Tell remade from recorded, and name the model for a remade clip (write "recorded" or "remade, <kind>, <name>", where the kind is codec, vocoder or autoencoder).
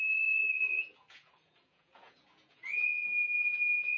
remade, vocoder, Vocos